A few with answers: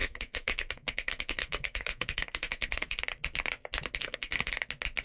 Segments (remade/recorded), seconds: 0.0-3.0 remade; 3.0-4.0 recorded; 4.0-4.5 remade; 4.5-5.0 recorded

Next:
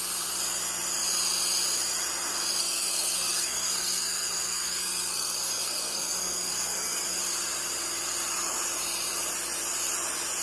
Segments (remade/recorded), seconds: 0.0-2.6 recorded; 2.6-7.2 remade; 7.2-10.4 recorded